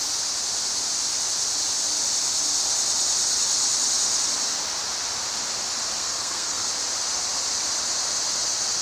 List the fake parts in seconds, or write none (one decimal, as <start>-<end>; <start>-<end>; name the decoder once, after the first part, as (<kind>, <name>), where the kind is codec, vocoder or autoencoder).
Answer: 6.0-6.7 (codec, SNAC)